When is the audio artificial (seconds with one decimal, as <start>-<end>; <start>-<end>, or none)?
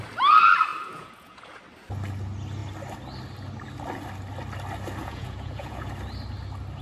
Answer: 0.7-1.6; 5.0-5.9